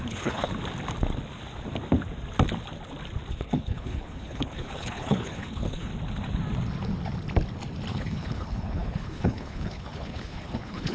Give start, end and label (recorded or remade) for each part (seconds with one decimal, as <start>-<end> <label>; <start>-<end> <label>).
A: 0.0-0.5 remade; 0.5-3.3 recorded; 3.3-5.9 remade; 5.9-7.9 recorded; 7.9-10.9 remade